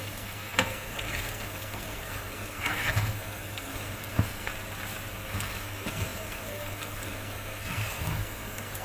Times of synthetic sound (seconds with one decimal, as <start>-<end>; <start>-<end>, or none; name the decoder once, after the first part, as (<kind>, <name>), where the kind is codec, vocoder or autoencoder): 0.0-4.5 (codec, SNAC); 5.1-8.8